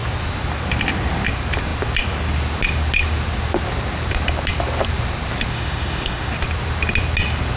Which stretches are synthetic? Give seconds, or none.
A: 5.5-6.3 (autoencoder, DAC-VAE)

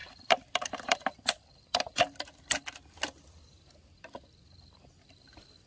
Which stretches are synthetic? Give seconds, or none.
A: none

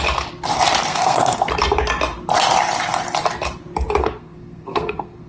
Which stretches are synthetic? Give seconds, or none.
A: 0.9-1.5 (codec, SNAC); 4.0-5.3

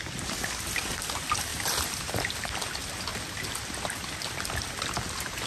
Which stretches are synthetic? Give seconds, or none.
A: 0.0-3.1 (vocoder, BigVGAN v2); 3.7-5.5

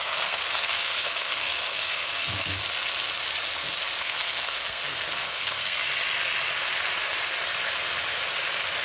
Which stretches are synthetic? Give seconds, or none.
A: 0.0-2.6 (codec, SNAC); 4.0-5.8

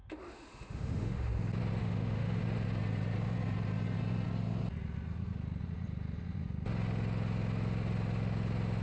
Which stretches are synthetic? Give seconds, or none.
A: 0.0-1.3 (autoencoder, DAC-VAE); 1.8-2.4

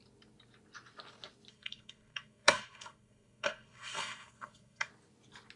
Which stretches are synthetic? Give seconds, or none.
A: 1.5-4.9 (codec, SNAC)